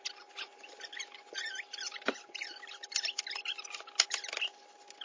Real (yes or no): yes